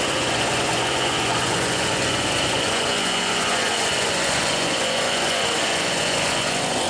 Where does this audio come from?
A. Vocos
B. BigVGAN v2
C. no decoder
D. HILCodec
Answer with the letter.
A